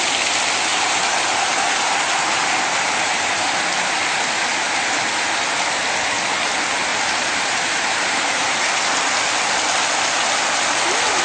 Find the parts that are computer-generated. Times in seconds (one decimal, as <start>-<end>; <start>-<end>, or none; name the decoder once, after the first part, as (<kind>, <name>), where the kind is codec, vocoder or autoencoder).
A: 0.7-3.6 (vocoder, BigVGAN v2); 6.9-8.7